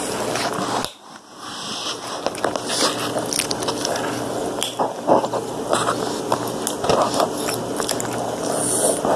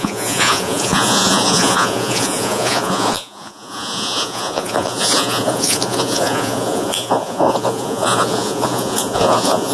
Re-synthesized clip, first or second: second